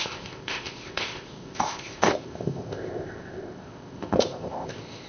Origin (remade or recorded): remade